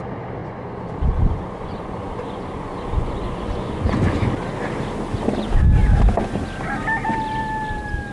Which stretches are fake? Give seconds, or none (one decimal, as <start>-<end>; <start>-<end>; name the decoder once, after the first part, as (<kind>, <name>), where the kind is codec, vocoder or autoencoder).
0.4-4.3 (vocoder, Vocos)